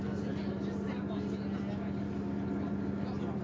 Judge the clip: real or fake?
real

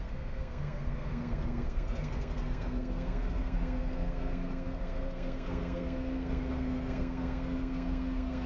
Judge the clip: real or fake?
fake